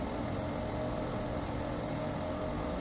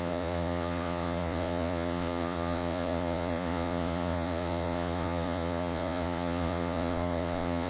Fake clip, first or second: second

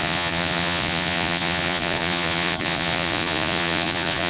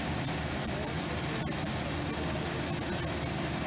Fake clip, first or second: first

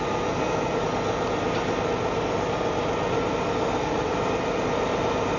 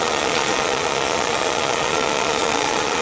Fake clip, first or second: second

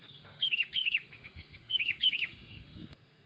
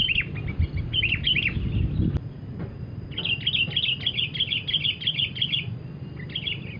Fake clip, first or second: first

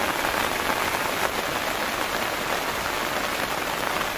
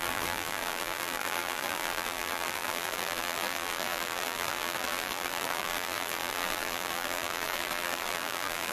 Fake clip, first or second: second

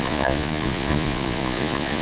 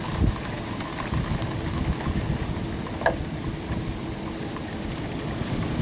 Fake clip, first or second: first